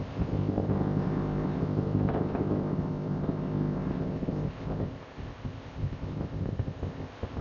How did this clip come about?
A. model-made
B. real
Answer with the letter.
A